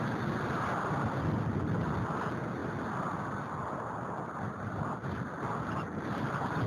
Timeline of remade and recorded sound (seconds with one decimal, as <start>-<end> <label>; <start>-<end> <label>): 0.0-6.7 recorded